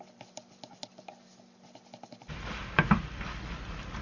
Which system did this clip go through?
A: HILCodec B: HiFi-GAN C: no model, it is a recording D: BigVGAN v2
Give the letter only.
C